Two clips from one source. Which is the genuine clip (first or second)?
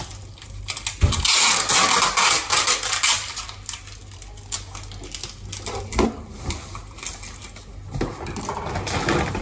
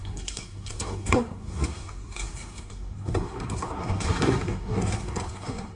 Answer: first